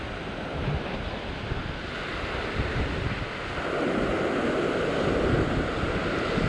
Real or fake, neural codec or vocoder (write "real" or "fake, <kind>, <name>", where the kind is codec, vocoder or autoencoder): real